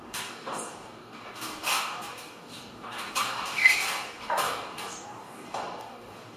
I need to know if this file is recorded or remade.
remade